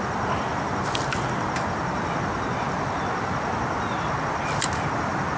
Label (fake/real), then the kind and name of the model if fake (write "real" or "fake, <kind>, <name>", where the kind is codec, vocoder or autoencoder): real